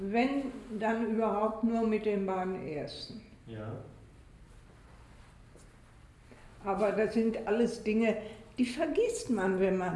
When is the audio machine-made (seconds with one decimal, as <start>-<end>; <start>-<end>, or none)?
6.5-7.5